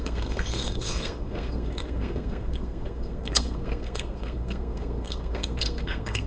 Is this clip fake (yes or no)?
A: yes